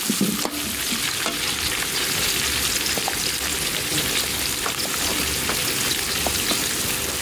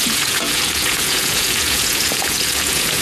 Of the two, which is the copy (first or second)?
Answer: second